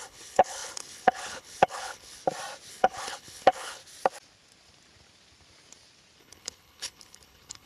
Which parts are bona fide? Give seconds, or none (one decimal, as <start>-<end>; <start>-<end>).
2.2-2.7; 3.8-6.2